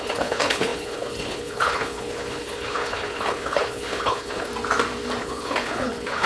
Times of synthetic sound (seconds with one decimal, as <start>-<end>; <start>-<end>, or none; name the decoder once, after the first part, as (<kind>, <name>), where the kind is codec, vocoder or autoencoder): 0.0-4.5 (codec, HILCodec); 5.2-6.3